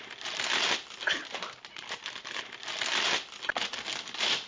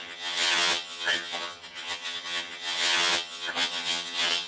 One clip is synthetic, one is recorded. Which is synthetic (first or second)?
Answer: second